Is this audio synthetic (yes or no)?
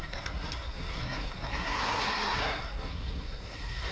yes